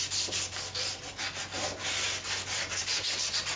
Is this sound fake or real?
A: real